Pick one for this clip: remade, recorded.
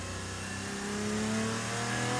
recorded